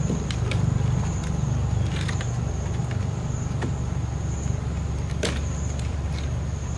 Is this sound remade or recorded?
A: recorded